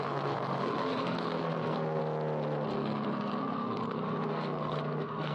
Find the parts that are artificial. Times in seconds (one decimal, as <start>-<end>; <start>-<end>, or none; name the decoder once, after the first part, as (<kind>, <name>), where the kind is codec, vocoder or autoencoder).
0.0-2.0 (codec, SNAC); 2.7-5.3